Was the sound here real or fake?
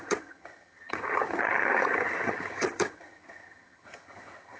fake